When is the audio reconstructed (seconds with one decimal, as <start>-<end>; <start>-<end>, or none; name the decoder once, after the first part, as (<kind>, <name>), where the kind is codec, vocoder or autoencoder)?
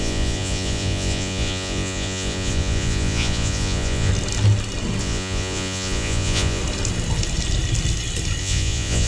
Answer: 0.0-4.1 (vocoder, Vocos); 5.0-6.6; 8.4-9.1